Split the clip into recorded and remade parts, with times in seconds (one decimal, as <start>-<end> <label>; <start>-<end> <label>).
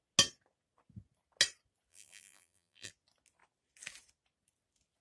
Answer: 0.0-1.9 recorded; 1.9-2.9 remade; 2.9-5.0 recorded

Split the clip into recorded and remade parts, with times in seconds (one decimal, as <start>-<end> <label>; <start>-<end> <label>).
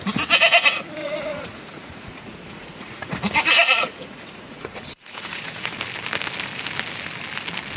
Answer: 0.0-1.0 recorded; 1.0-5.7 remade; 5.7-7.8 recorded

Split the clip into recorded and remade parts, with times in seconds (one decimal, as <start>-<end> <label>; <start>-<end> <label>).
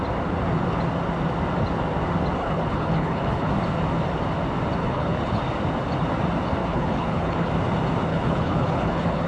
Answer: 0.0-2.4 recorded; 2.4-3.5 remade; 3.5-4.8 recorded; 4.8-5.4 remade; 5.4-6.6 recorded; 6.6-7.5 remade; 7.5-8.1 recorded; 8.1-9.3 remade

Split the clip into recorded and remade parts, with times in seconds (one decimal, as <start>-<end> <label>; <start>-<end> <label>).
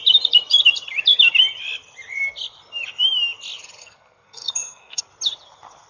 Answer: 0.0-3.8 recorded; 3.8-5.0 remade; 5.0-5.9 recorded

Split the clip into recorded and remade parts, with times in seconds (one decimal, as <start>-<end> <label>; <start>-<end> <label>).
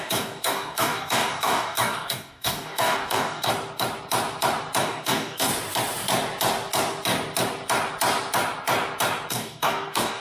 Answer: 0.0-3.5 remade; 3.5-4.8 recorded; 4.8-5.5 remade; 5.5-9.3 recorded; 9.3-10.2 remade